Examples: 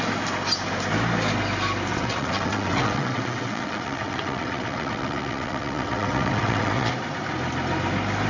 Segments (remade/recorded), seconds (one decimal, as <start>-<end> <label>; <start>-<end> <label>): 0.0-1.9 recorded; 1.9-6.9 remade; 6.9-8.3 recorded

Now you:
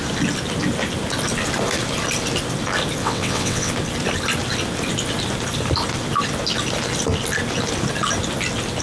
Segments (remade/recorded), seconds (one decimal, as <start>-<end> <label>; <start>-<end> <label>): 0.0-3.0 recorded; 3.0-3.7 remade; 3.7-8.8 recorded

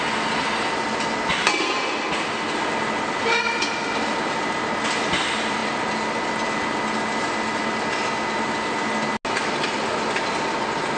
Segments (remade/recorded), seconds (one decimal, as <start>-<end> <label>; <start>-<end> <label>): 0.0-11.0 recorded